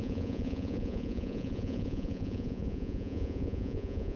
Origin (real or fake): fake